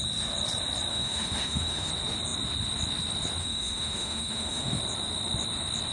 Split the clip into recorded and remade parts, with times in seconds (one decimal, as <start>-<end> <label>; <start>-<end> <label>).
0.0-0.9 recorded; 0.9-1.9 remade; 1.9-3.4 recorded; 3.4-4.8 remade; 4.8-5.9 recorded